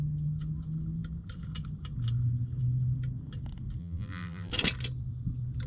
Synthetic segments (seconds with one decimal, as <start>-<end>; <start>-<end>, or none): 3.8-4.5